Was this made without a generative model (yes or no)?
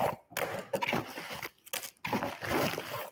yes